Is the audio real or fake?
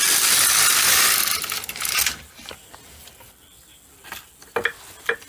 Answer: real